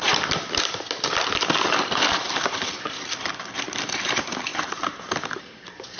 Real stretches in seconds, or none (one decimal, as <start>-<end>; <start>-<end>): none